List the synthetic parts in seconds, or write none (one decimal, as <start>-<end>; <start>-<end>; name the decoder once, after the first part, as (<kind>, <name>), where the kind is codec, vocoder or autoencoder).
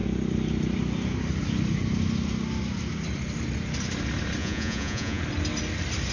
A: 4.4-5.2 (vocoder, Vocos)